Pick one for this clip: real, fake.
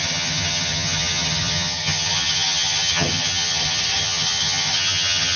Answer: fake